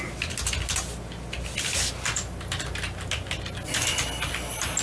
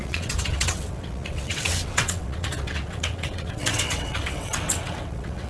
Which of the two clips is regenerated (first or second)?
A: second